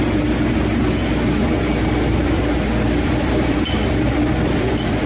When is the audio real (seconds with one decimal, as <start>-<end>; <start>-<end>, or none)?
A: 0.0-2.2